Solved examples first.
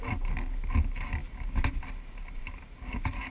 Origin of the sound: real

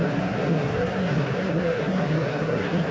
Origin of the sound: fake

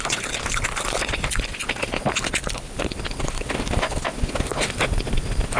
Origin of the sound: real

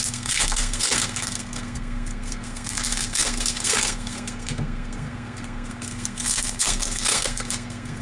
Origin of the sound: fake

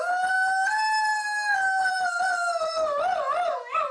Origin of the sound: real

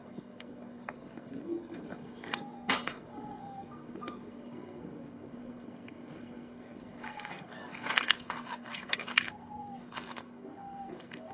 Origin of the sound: fake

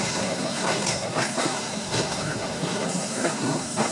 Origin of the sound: fake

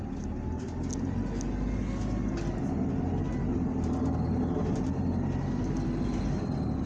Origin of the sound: real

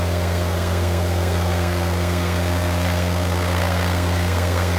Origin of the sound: fake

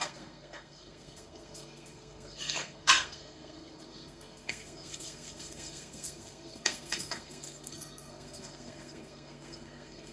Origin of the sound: fake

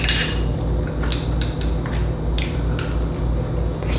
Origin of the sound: real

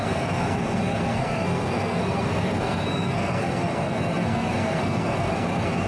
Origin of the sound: fake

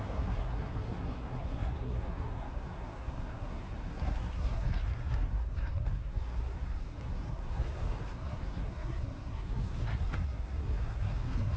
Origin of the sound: fake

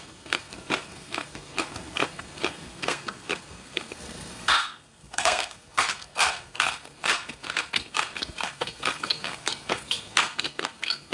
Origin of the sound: fake